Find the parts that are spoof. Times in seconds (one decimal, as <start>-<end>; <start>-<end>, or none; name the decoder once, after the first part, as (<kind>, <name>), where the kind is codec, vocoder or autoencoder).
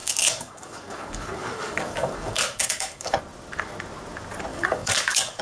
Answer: 0.0-3.2 (codec, DAC); 4.5-5.4